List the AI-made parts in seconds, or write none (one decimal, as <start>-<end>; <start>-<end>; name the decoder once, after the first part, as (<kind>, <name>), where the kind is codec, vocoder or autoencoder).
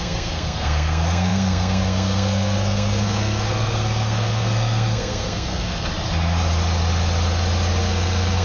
0.0-5.9 (codec, SNAC); 7.8-8.4